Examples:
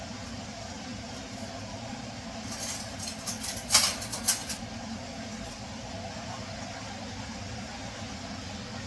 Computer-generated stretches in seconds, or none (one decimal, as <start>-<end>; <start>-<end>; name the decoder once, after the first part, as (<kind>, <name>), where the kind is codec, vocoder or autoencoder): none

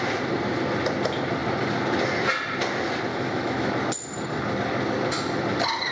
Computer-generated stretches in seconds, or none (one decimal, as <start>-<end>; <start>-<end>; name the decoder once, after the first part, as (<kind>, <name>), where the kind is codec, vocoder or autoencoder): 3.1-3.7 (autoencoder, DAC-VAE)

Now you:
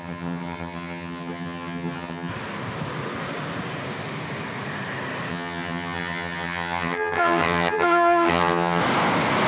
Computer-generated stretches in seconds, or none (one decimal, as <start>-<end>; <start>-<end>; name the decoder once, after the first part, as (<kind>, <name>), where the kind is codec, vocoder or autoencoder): 0.0-2.3 (vocoder, HiFi-GAN); 5.3-8.8

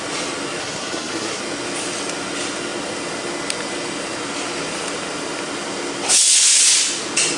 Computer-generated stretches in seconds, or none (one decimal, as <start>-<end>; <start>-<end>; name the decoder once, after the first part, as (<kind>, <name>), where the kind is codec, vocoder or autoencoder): 0.6-1.4 (codec, SNAC)

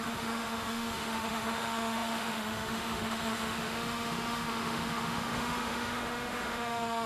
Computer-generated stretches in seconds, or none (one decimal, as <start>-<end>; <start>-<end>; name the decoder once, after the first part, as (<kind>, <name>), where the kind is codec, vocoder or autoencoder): 0.0-7.1 (autoencoder, DAC-VAE)

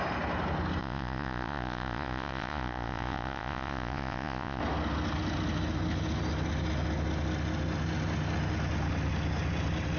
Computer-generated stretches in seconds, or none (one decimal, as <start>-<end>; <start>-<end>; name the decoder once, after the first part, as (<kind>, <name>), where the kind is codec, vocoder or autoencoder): 0.8-4.6 (vocoder, Vocos)